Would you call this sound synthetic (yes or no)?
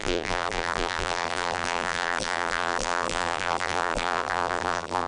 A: yes